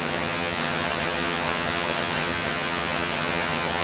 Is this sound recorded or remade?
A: remade